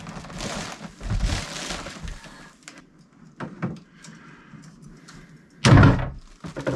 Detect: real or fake real